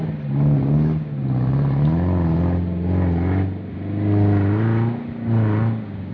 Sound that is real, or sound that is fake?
real